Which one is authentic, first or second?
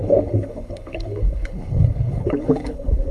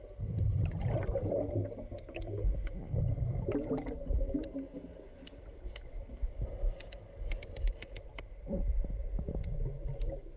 second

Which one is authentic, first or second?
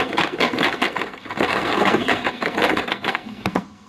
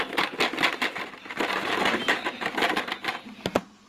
second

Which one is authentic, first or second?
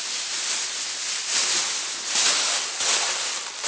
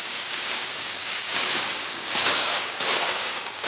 first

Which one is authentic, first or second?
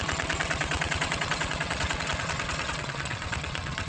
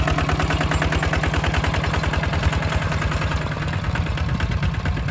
second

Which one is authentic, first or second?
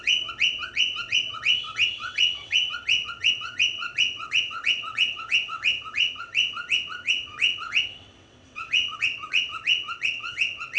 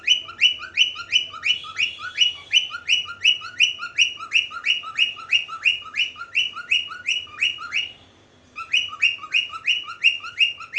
second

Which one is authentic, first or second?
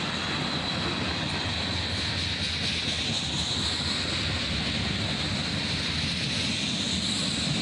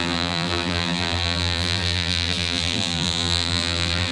first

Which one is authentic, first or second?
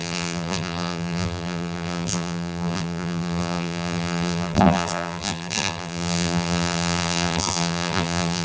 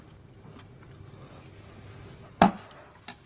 second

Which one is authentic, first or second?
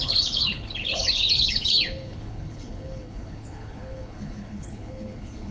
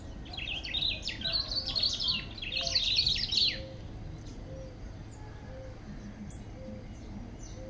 second